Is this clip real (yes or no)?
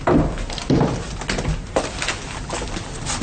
yes